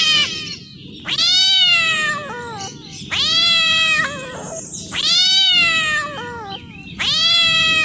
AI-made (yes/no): yes